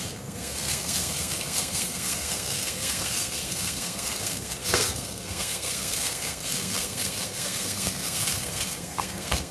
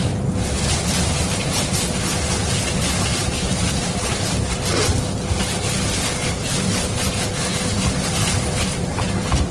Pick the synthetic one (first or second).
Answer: first